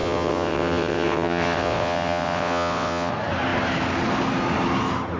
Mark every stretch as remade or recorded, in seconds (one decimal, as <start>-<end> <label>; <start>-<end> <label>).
0.0-3.1 remade; 3.1-5.2 recorded